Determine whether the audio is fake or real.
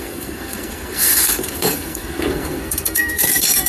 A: fake